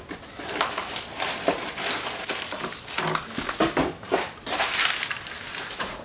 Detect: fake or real real